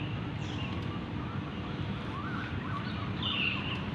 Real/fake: real